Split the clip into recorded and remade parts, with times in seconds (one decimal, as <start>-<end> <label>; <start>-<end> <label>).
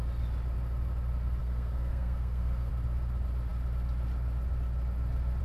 0.0-1.4 recorded; 1.4-2.7 remade; 2.7-5.4 recorded